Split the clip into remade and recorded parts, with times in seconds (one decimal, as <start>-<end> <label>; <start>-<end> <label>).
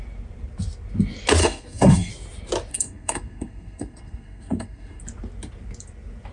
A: 0.0-1.4 recorded; 1.4-2.1 remade; 2.1-2.7 recorded; 2.7-5.0 remade; 5.0-6.3 recorded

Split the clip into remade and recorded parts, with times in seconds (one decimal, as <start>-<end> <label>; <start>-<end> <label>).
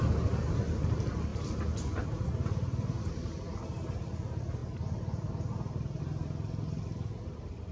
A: 0.0-7.7 recorded